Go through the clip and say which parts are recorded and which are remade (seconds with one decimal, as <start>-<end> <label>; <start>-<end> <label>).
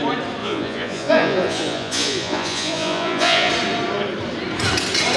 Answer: 0.0-0.4 recorded; 0.4-3.5 remade; 3.5-5.2 recorded